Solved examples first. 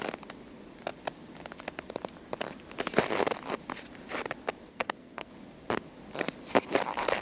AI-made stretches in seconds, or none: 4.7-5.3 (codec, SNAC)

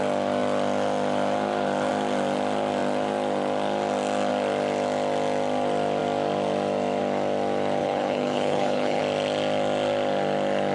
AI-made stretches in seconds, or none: 7.8-9.0 (codec, HILCodec)

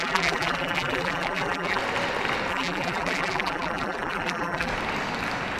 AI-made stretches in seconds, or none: 0.0-1.8 (vocoder, BigVGAN v2); 2.5-4.7

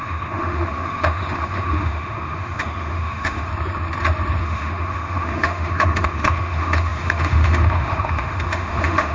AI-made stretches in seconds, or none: 0.0-3.5 (autoencoder, DAC-VAE); 4.4-9.1

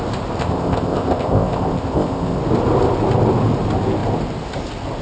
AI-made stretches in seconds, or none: 0.4-2.4 (codec, ZipCodec)

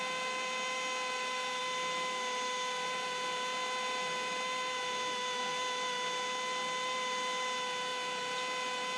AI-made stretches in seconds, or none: none